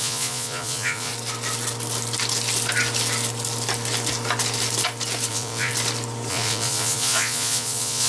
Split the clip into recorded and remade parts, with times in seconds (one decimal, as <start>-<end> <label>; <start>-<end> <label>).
0.0-1.1 remade; 1.1-5.3 recorded; 5.3-5.7 remade; 5.7-6.3 recorded; 6.3-8.1 remade

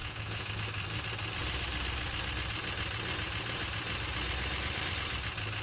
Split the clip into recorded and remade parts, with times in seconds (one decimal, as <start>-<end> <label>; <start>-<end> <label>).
0.0-0.5 remade; 0.5-5.6 recorded